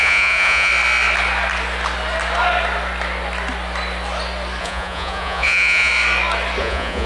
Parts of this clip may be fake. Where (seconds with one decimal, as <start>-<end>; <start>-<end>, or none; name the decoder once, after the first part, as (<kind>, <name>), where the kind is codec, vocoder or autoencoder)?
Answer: 0.0-0.7 (vocoder, Vocos); 4.6-5.9; 6.6-7.1